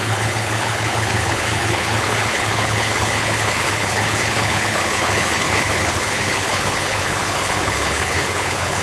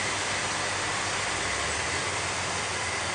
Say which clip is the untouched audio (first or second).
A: second